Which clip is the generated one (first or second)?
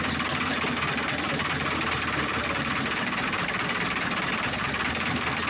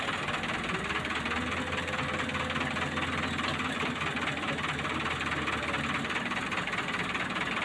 first